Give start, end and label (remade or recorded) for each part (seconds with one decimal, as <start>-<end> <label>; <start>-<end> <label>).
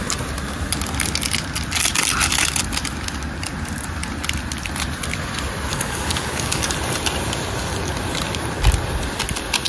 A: 0.0-5.7 recorded; 5.7-6.7 remade; 6.7-9.7 recorded